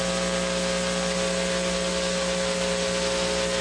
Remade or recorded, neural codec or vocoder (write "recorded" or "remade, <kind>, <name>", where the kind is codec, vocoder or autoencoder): recorded